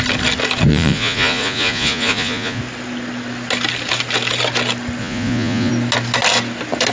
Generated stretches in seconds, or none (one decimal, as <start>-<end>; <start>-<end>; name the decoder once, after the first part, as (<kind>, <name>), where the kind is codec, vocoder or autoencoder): 0.7-2.6 (vocoder, Vocos); 5.0-5.7